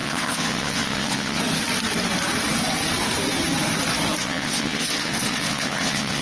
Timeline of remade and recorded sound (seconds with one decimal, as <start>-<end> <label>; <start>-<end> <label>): 0.0-1.4 remade; 1.4-4.2 recorded; 4.2-6.2 remade

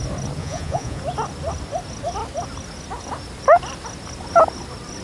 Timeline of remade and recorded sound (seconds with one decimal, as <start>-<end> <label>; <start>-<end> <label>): 0.0-0.4 recorded; 0.4-1.0 remade; 1.0-5.0 recorded

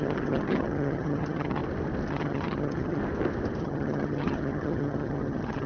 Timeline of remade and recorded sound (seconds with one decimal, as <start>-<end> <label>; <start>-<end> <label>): 0.0-1.6 remade; 1.6-2.1 recorded; 2.1-3.0 remade; 3.0-3.6 recorded; 3.6-5.7 remade

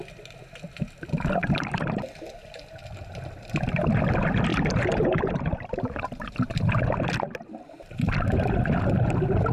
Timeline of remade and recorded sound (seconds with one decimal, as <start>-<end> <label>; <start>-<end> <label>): 0.0-4.5 recorded; 4.5-6.6 remade; 6.6-9.5 recorded

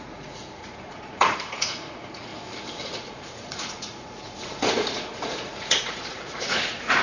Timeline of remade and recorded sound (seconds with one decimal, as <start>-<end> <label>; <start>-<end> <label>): 0.0-2.3 remade; 2.3-2.8 recorded; 2.8-7.0 remade

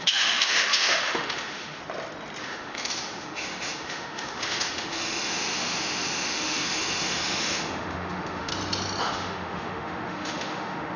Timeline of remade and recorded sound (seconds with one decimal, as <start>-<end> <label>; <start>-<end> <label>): 0.0-1.8 remade; 1.8-2.4 recorded; 2.4-8.5 remade; 8.5-9.0 recorded; 9.0-11.0 remade

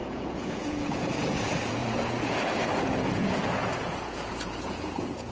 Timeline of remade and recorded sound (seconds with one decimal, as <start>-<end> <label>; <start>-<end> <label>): 0.0-5.3 remade

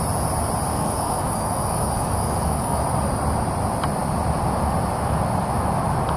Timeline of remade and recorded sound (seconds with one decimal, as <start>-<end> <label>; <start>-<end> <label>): 0.0-0.7 recorded; 0.7-2.8 remade; 2.8-6.2 recorded